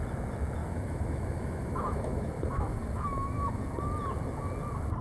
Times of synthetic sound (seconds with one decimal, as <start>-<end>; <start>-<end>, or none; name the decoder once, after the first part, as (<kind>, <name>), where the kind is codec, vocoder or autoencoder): 0.6-3.6 (autoencoder, DAC-VAE)